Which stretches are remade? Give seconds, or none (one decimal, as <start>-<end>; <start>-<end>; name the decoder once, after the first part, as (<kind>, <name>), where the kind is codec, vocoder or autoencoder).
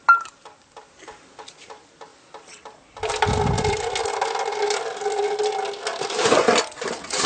2.1-3.8 (vocoder, BigVGAN v2); 5.9-7.3